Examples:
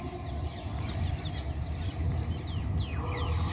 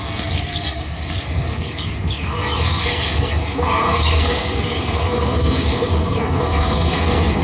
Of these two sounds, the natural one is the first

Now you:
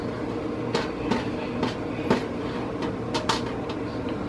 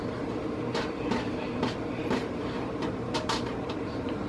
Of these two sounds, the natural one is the first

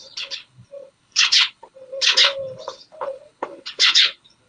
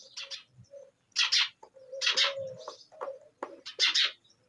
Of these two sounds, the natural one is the second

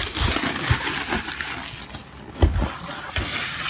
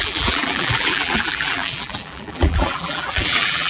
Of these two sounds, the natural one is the first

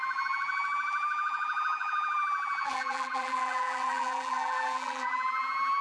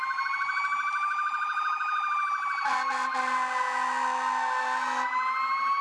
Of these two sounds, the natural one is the second